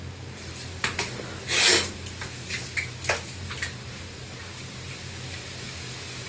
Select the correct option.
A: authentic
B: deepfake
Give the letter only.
A